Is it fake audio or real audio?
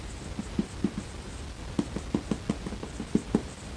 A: real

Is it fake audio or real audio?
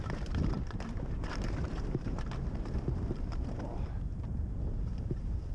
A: fake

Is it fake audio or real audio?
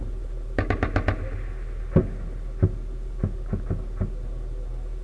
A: real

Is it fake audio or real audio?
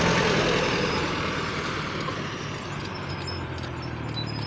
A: real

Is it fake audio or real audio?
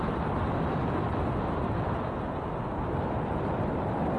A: real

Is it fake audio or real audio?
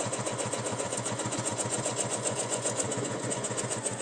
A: fake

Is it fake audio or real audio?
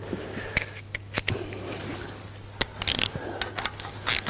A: real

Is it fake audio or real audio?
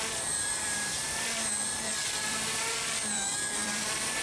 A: fake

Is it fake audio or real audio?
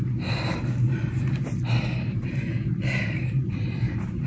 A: fake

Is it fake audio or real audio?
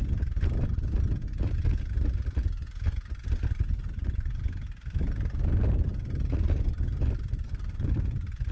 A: real